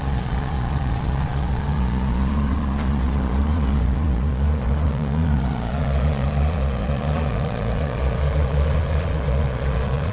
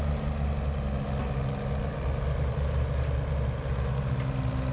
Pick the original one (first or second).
second